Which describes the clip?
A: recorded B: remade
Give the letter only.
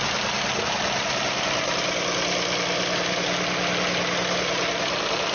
A